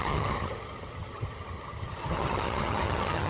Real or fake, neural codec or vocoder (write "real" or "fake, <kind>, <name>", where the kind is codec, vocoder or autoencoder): fake, vocoder, HiFi-GAN